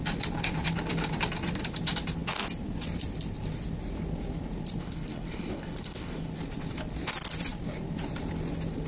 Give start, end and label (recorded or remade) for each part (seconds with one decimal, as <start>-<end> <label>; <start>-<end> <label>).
0.0-4.8 recorded; 4.8-6.3 remade; 6.3-8.9 recorded